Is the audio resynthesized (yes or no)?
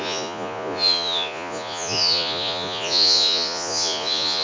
yes